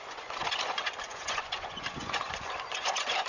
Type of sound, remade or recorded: remade